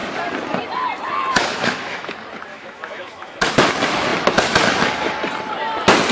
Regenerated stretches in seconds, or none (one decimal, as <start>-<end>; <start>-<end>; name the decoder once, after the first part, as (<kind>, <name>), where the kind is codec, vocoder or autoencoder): 1.5-2.1 (autoencoder, DAC-VAE); 2.5-3.5